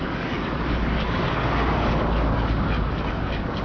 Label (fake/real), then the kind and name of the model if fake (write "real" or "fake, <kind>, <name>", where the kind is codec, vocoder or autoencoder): fake, codec, DAC